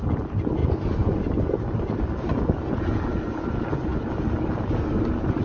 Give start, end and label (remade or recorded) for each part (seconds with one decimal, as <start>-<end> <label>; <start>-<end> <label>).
0.0-5.4 recorded